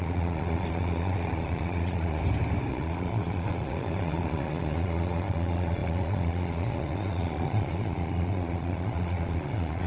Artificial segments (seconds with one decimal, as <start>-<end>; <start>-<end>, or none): 0.0-2.2; 2.7-9.9